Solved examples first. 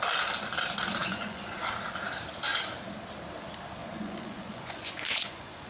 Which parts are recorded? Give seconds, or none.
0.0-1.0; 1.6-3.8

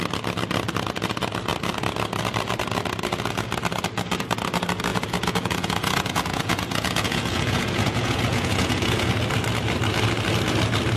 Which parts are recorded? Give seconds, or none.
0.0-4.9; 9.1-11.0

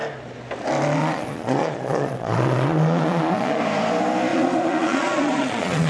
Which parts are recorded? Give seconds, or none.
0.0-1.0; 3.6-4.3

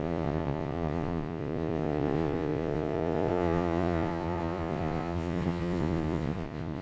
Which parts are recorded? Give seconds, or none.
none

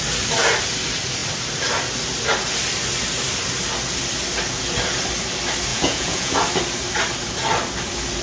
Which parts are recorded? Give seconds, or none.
0.0-5.7; 6.3-8.2

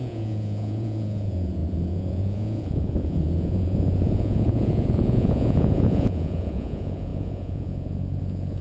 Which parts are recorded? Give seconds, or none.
none

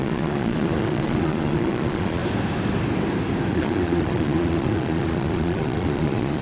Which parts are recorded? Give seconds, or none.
2.2-3.5